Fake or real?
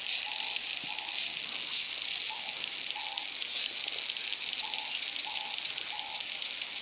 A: real